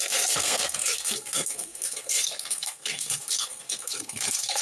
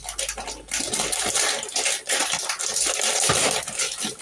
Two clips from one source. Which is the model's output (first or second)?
first